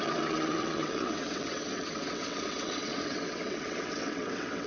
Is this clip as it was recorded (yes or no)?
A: no